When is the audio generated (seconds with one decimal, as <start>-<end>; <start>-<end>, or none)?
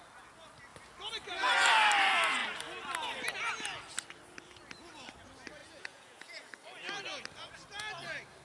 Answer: 5.6-6.4